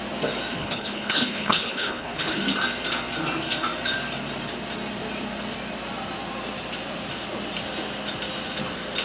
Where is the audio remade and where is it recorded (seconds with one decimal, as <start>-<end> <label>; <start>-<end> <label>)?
0.0-0.6 recorded; 0.6-2.4 remade; 2.4-9.0 recorded